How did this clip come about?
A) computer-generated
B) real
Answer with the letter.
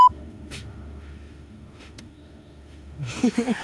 A